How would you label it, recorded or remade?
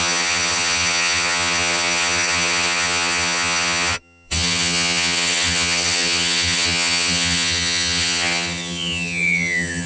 remade